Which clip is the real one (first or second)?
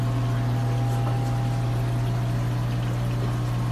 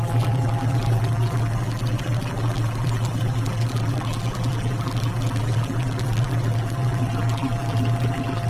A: first